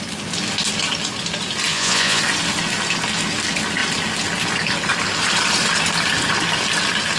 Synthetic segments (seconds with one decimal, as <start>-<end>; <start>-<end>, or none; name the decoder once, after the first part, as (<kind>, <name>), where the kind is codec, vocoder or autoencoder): 1.7-2.2 (vocoder, Vocos)